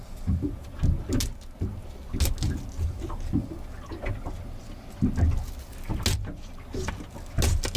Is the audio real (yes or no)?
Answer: yes